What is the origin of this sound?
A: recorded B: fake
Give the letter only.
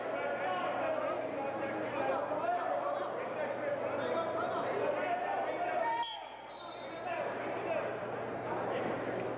A